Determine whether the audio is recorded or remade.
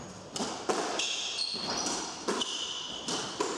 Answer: recorded